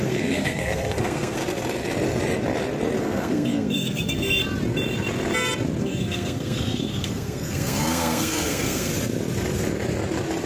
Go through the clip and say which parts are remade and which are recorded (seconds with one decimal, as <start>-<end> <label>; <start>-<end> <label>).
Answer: 0.0-1.4 remade; 1.4-3.0 recorded; 3.0-4.4 remade; 4.4-5.8 recorded; 5.8-8.9 remade; 8.9-10.5 recorded